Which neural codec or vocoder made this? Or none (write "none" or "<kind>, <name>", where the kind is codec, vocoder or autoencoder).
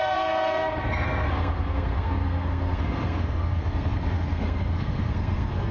codec, SNAC